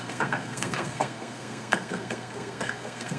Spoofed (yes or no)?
yes